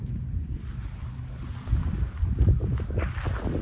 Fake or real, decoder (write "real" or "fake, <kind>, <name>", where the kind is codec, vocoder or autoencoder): real